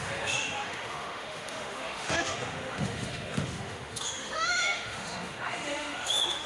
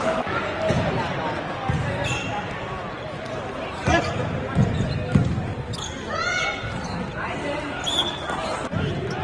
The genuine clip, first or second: second